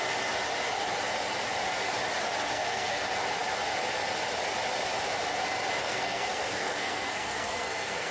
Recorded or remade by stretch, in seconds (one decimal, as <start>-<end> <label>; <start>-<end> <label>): 0.0-2.5 recorded; 2.5-3.0 remade; 3.0-5.8 recorded; 5.8-8.1 remade